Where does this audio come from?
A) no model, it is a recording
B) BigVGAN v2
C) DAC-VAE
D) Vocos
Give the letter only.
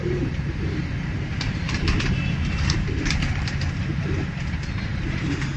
B